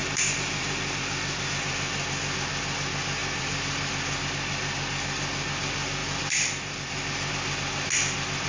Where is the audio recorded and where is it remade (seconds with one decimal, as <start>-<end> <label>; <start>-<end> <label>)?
0.0-2.5 remade; 2.5-3.2 recorded; 3.2-4.2 remade; 4.2-6.0 recorded; 6.0-7.3 remade; 7.3-8.5 recorded